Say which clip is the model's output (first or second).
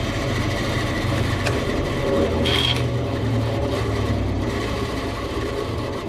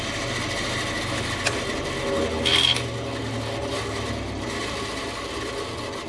first